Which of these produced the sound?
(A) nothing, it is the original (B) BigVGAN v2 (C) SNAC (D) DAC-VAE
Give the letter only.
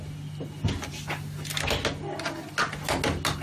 A